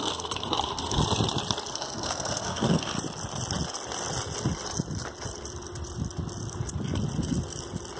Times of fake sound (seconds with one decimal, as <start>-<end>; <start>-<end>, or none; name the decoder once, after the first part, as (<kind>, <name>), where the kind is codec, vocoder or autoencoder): 0.0-1.0 (codec, SNAC); 1.7-2.9